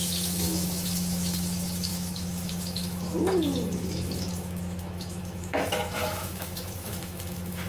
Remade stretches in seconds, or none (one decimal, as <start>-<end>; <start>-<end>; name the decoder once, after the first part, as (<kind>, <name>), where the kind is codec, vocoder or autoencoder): 0.0-7.7 (autoencoder, DAC-VAE)